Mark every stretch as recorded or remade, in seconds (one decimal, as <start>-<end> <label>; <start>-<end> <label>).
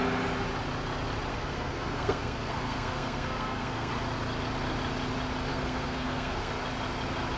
0.0-1.3 recorded; 1.3-3.9 remade; 3.9-5.5 recorded; 5.5-6.5 remade; 6.5-7.4 recorded